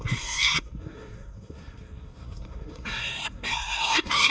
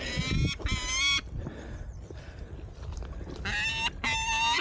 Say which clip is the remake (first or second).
first